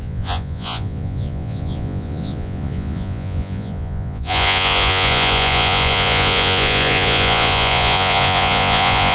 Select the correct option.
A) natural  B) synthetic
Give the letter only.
B